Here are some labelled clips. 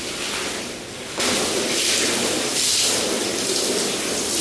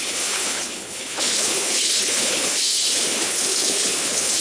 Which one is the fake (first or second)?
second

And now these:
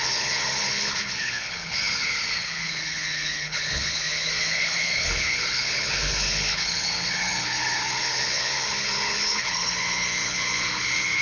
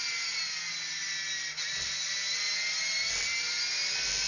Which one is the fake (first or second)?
first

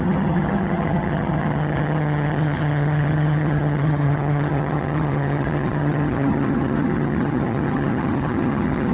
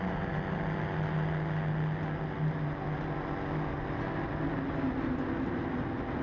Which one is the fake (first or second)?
first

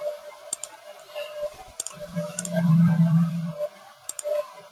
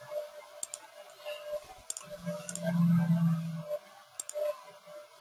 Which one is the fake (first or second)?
first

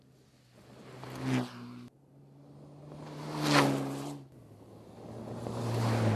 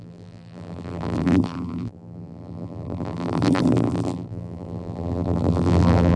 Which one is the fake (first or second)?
second